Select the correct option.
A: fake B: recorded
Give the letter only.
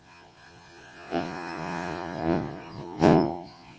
A